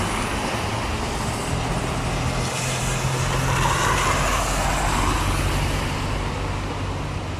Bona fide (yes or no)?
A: yes